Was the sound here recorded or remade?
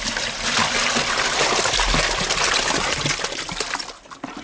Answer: recorded